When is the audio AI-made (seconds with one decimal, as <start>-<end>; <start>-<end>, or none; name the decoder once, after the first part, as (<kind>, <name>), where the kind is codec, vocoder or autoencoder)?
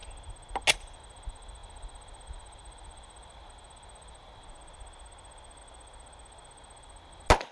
none